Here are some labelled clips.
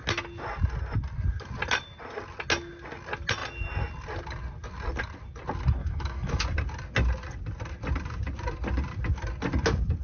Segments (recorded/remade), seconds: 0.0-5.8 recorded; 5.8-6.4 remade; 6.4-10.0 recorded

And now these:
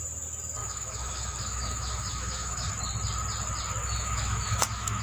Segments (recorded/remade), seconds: 0.0-0.6 recorded; 0.6-2.7 remade; 2.7-3.8 recorded; 3.8-5.0 remade

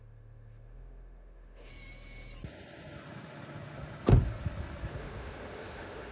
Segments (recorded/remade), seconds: 0.0-1.7 remade; 1.7-4.9 recorded; 4.9-6.1 remade

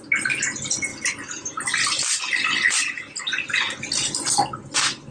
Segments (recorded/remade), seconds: 0.0-5.1 recorded

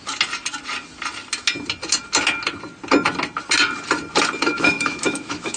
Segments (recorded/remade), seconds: 0.0-4.5 recorded; 4.5-5.6 remade